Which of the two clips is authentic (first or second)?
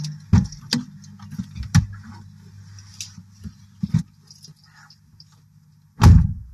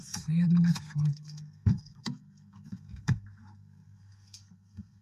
first